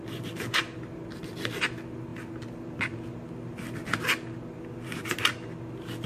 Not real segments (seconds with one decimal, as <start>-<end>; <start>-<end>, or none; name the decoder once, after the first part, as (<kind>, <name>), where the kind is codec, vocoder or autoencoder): none